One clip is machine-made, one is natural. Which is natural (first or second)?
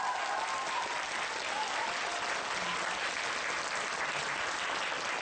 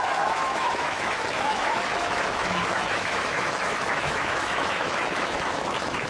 first